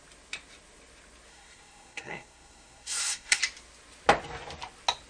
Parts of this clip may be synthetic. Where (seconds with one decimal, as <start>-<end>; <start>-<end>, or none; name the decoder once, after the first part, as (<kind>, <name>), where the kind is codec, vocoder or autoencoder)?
1.3-3.4 (codec, SNAC)

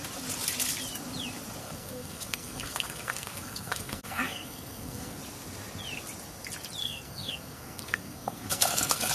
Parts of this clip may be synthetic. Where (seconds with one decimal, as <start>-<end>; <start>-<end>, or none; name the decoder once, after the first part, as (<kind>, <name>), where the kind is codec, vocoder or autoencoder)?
1.6-5.2 (codec, SNAC); 6.8-9.1

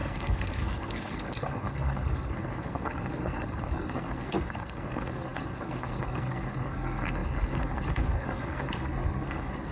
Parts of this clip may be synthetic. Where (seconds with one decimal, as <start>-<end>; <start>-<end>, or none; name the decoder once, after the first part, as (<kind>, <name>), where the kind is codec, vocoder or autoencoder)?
0.0-9.7 (codec, SNAC)

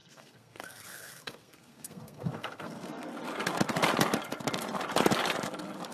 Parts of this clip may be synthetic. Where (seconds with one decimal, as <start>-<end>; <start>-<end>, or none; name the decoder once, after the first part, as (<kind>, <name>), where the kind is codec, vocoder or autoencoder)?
0.0-3.1 (codec, SNAC)

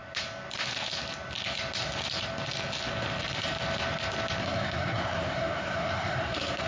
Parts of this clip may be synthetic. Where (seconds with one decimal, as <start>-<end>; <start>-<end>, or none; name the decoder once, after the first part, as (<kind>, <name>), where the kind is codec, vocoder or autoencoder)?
4.4-6.7 (codec, SNAC)

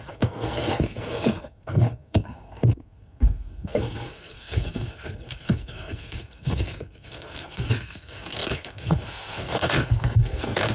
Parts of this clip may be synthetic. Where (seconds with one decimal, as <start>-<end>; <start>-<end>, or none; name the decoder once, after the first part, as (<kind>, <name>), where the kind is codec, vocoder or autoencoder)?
0.0-10.7 (codec, SNAC)

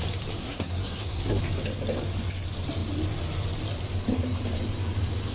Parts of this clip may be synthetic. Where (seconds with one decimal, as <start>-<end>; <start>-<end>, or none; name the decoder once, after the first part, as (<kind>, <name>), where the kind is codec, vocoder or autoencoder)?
0.4-1.4 (codec, SNAC)